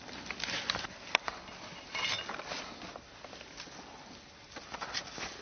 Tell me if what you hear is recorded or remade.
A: recorded